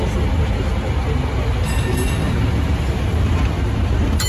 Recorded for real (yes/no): yes